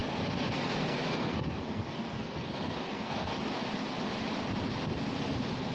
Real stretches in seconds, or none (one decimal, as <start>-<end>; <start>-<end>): 3.4-5.7